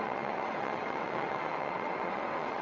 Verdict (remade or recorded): remade